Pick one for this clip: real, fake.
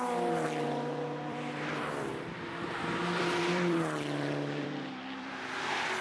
fake